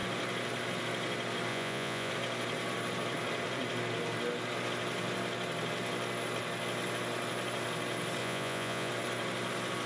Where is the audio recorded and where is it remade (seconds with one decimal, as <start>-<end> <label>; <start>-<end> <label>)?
0.0-1.5 recorded; 1.5-2.1 remade; 2.1-8.2 recorded; 8.2-8.9 remade; 8.9-9.9 recorded